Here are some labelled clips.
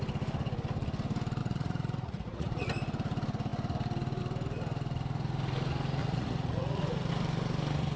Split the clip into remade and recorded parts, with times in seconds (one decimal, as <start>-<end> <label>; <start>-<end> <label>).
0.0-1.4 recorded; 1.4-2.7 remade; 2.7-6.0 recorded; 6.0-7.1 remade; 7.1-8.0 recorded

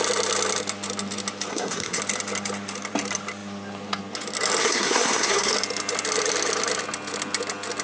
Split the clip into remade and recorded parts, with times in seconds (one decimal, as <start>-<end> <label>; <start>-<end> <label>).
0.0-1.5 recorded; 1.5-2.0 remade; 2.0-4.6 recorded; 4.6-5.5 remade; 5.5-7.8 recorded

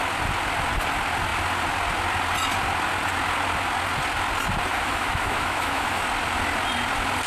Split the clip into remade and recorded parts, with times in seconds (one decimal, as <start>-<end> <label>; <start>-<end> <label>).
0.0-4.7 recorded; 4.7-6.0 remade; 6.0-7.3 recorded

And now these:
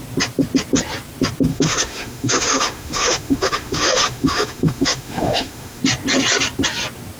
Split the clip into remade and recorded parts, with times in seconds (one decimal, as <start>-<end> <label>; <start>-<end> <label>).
0.0-1.5 recorded; 1.5-5.8 remade; 5.8-7.2 recorded

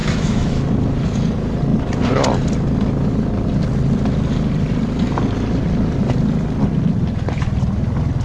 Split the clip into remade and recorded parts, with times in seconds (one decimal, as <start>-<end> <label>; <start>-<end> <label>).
0.0-0.6 remade; 0.6-8.2 recorded